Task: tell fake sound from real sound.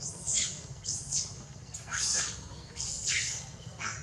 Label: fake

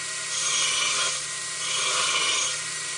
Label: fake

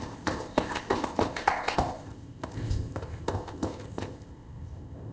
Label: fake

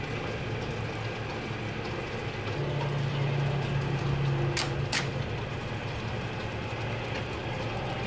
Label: real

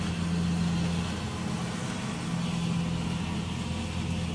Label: real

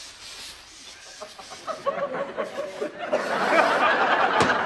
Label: real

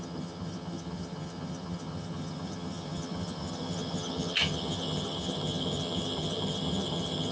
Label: fake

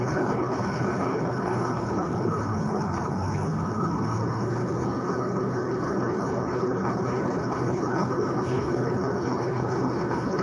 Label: fake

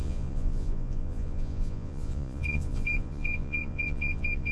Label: fake